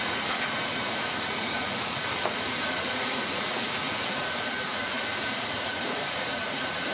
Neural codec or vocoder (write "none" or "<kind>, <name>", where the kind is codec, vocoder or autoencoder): vocoder, Vocos